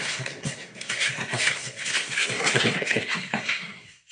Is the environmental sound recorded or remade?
remade